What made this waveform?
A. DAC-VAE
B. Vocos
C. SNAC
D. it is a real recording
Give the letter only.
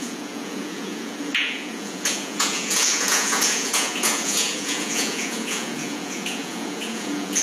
B